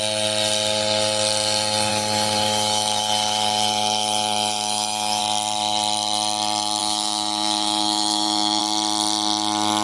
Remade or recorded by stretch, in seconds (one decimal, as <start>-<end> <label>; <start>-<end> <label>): 0.0-1.9 recorded; 1.9-5.2 remade; 5.2-6.8 recorded; 6.8-8.6 remade; 8.6-9.8 recorded